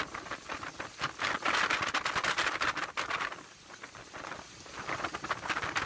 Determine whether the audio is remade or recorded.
recorded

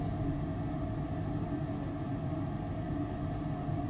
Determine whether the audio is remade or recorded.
recorded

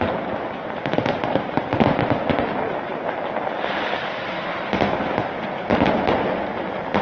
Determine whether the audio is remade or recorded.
recorded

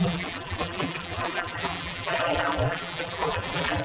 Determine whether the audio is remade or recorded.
remade